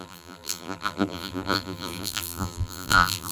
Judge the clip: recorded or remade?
remade